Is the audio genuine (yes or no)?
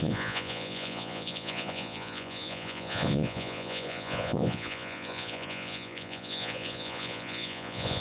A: no